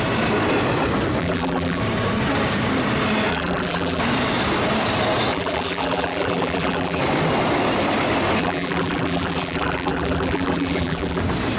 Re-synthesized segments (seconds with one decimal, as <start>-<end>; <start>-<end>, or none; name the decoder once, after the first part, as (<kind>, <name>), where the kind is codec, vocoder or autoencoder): 1.2-1.8 (vocoder, BigVGAN v2); 3.3-4.0; 5.3-7.0; 8.4-11.2